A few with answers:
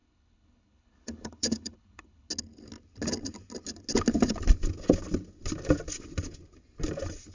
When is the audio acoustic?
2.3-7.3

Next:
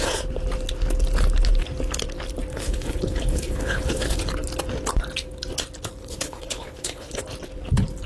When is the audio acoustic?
0.0-2.5; 4.2-6.0; 7.2-8.1